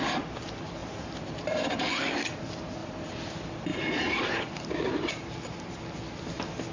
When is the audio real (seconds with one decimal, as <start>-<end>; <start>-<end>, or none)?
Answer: 0.0-0.8; 1.8-2.8; 3.3-3.7; 5.8-6.7